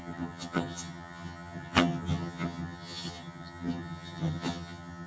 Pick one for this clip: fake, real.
fake